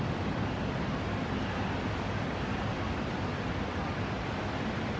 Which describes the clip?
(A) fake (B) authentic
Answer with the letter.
B